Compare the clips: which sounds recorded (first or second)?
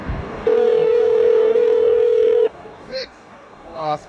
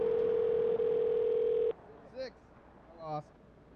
second